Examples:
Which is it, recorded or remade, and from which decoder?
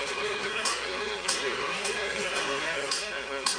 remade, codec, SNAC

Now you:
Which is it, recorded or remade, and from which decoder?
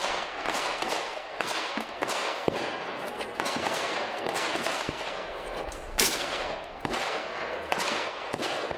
remade, codec, SNAC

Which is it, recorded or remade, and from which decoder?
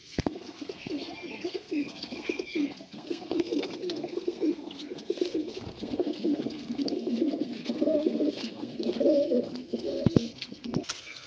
remade, codec, SNAC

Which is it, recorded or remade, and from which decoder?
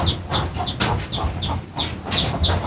recorded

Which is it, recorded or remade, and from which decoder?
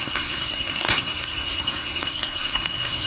remade, codec, SNAC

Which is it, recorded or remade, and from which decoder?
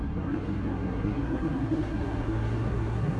remade, codec, SNAC